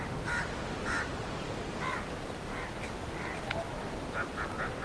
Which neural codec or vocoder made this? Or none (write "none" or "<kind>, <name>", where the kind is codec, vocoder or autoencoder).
none